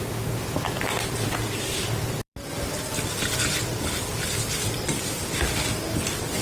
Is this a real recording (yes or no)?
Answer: no